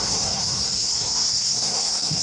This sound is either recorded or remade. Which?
remade